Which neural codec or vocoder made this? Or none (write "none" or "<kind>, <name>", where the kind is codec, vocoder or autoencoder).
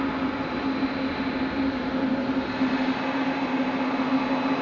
none